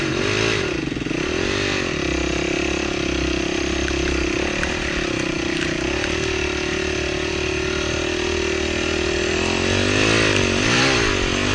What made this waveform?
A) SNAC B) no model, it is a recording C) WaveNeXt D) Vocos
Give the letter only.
B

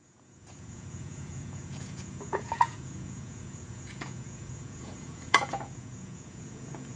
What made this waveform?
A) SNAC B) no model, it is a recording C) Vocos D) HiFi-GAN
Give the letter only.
C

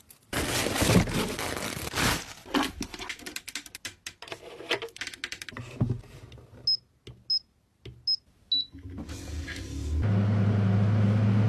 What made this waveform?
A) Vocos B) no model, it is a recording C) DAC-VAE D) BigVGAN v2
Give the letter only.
B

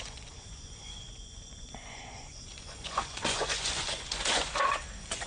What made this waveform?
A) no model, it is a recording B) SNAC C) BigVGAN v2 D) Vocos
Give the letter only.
D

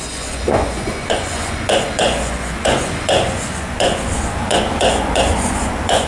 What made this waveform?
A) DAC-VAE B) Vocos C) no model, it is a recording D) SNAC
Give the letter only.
B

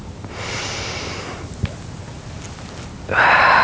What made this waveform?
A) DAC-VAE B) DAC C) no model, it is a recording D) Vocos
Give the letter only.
C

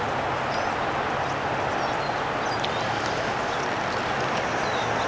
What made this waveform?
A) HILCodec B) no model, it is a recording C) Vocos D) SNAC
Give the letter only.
B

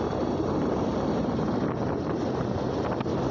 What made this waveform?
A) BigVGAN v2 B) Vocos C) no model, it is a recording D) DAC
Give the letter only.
C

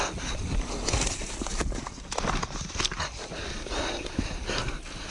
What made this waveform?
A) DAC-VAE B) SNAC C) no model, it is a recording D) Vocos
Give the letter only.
C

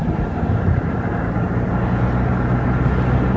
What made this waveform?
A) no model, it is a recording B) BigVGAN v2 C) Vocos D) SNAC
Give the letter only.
A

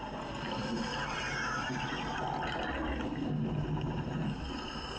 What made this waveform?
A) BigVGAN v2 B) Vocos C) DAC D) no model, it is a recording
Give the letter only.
D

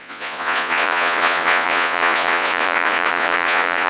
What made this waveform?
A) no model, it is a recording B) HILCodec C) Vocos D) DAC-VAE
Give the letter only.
C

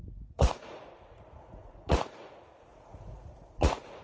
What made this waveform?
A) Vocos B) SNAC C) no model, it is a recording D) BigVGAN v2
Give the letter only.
A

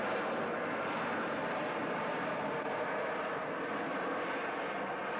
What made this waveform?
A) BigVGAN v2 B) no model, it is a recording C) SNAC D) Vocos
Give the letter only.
B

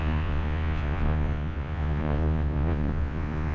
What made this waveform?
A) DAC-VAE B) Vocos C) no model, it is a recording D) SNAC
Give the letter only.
B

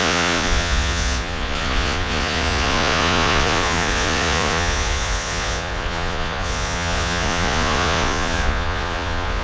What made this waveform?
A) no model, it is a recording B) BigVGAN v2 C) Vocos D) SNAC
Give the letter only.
C